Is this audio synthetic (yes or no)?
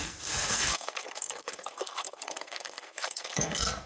yes